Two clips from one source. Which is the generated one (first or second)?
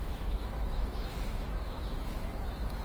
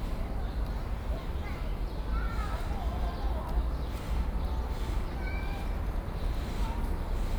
first